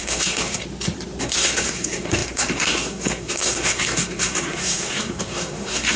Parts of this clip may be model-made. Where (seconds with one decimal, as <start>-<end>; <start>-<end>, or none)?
0.0-0.6; 1.2-6.0